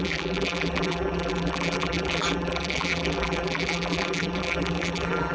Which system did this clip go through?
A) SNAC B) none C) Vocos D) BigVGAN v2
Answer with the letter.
D